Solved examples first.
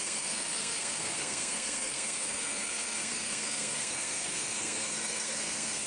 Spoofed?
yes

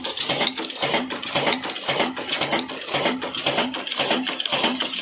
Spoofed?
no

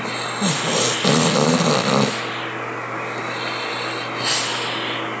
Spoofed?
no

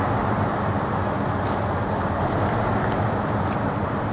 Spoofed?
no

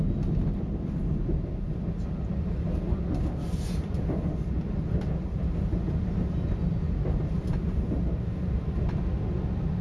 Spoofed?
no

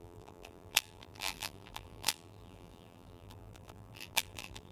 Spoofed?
yes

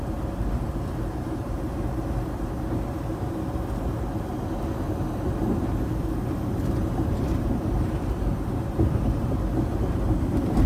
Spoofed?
yes